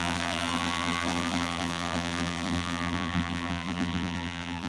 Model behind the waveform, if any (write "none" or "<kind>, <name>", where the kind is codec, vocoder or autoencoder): vocoder, BigVGAN v2